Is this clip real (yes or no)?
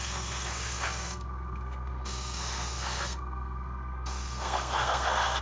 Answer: no